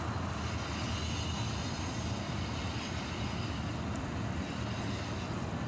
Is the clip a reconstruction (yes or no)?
no